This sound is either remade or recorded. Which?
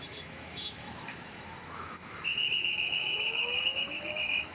remade